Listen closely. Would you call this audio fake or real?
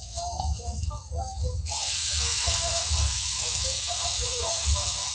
fake